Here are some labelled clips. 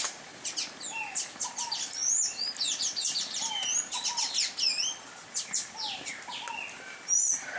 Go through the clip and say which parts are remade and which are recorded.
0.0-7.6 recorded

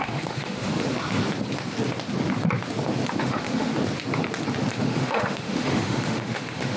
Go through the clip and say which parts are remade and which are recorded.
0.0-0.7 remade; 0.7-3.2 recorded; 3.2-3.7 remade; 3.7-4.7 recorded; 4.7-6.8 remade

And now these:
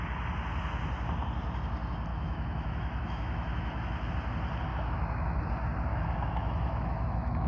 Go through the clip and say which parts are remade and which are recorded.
0.0-2.1 recorded; 2.1-4.1 remade; 4.1-4.7 recorded; 4.7-5.4 remade; 5.4-5.9 recorded; 5.9-7.5 remade